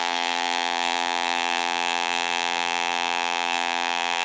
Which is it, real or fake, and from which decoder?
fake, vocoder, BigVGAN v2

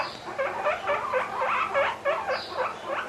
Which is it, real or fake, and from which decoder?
real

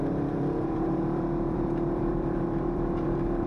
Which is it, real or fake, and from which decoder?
fake, vocoder, BigVGAN v2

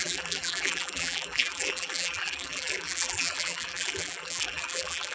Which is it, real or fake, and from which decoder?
fake, vocoder, BigVGAN v2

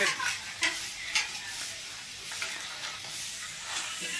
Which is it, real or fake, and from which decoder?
fake, vocoder, BigVGAN v2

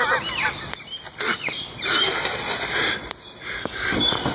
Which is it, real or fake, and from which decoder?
fake, vocoder, BigVGAN v2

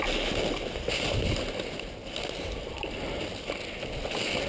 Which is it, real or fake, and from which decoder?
real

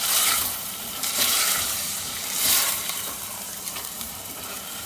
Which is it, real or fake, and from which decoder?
fake, vocoder, BigVGAN v2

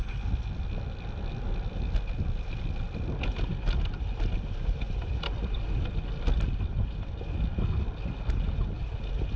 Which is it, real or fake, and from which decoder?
real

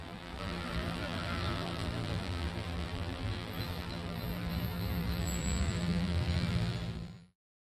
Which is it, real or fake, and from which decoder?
fake, vocoder, BigVGAN v2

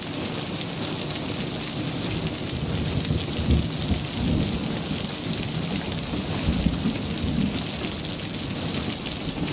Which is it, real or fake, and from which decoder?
real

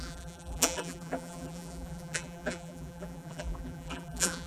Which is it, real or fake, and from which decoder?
fake, vocoder, BigVGAN v2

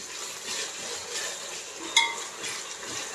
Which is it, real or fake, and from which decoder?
real